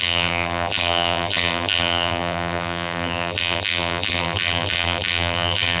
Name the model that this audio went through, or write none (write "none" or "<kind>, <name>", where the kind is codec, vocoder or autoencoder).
vocoder, BigVGAN v2